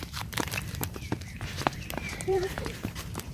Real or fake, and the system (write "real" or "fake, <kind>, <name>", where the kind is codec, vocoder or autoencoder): fake, vocoder, BigVGAN v2